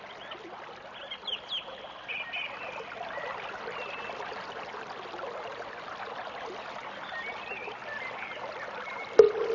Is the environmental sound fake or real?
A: real